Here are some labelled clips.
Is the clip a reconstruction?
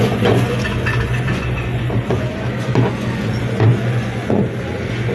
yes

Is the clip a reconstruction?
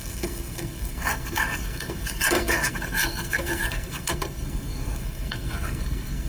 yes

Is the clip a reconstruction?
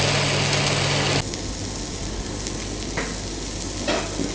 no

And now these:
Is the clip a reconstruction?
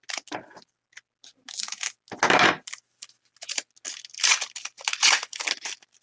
no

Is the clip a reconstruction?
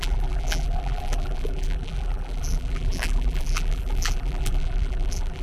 yes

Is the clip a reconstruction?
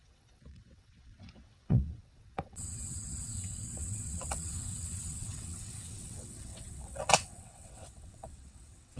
yes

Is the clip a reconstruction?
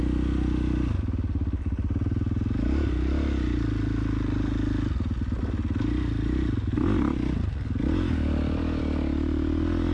no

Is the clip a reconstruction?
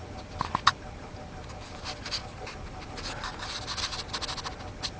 no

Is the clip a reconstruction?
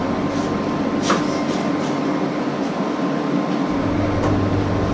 no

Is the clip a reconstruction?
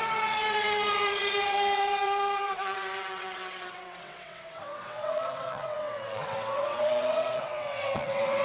yes